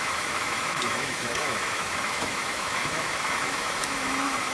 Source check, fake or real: fake